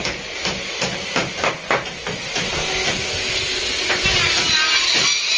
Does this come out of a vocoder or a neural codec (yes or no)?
no